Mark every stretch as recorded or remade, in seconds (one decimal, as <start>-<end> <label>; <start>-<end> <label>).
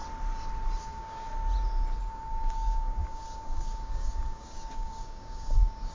0.0-0.8 recorded; 0.8-1.3 remade; 1.3-2.0 recorded; 2.0-5.9 remade